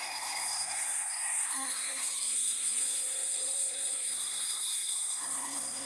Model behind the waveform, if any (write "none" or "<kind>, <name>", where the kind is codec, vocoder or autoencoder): codec, SNAC